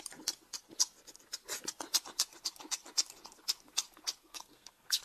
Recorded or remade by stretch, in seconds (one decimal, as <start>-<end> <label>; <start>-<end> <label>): 0.0-4.2 recorded; 4.2-5.0 remade

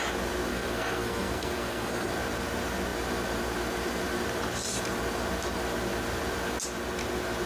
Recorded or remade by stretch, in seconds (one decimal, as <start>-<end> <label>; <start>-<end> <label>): 0.0-0.5 recorded; 0.5-2.1 remade; 2.1-7.5 recorded